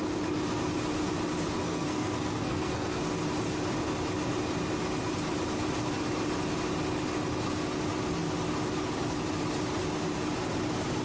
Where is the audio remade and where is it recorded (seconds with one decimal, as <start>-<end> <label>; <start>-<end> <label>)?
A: 0.0-1.6 recorded; 1.6-3.0 remade; 3.0-11.0 recorded